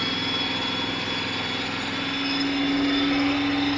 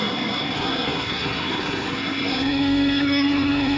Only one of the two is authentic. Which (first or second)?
first